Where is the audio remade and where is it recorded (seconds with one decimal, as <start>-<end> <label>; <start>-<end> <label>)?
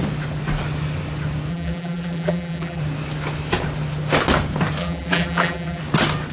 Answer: 0.0-1.5 recorded; 1.5-2.8 remade; 2.8-4.8 recorded; 4.8-5.8 remade; 5.8-6.3 recorded